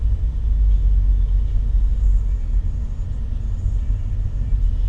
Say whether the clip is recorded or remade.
recorded